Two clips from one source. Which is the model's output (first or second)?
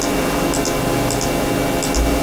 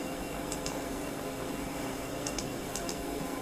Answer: second